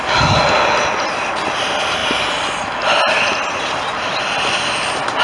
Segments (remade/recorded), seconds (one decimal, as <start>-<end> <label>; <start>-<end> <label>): 0.0-5.2 recorded

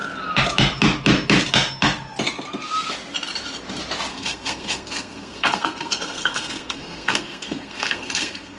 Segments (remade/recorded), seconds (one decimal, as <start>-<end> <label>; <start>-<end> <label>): 0.0-4.1 recorded; 4.1-8.6 remade

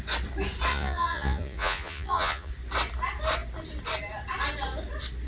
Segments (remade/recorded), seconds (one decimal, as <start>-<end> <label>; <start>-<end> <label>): 0.0-0.7 recorded; 0.7-2.5 remade; 2.5-5.3 recorded

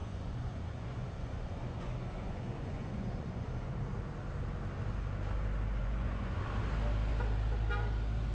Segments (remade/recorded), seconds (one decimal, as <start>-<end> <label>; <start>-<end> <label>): 0.0-3.8 remade; 3.8-5.8 recorded; 5.8-6.4 remade; 6.4-8.3 recorded

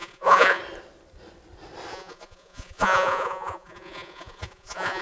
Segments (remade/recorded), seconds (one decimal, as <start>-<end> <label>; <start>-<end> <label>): 0.0-0.6 remade; 0.6-1.9 recorded; 1.9-5.0 remade

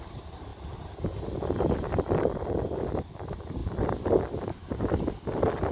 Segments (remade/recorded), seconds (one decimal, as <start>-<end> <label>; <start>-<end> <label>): 0.0-5.7 recorded